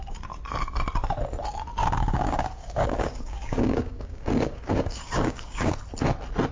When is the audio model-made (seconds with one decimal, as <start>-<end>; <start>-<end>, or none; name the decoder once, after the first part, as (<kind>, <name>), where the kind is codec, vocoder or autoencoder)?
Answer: 1.8-5.7 (codec, DAC)